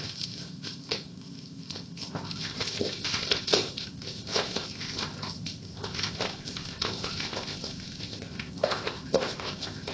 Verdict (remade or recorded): remade